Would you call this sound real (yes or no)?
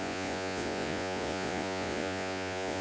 no